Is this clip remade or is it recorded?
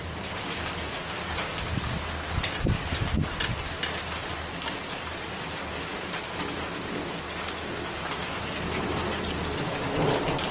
recorded